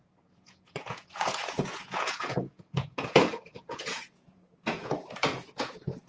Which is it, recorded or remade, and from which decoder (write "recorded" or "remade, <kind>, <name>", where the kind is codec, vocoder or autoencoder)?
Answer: remade, vocoder, Vocos